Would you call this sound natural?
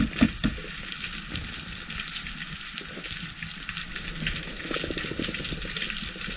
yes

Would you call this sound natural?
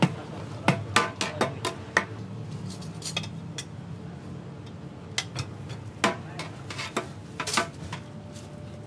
yes